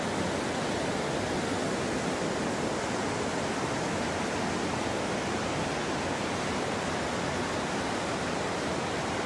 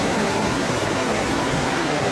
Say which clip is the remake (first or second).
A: second